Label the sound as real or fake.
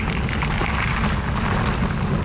real